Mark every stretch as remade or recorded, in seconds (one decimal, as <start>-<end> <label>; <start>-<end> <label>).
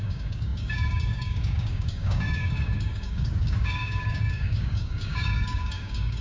0.0-6.2 remade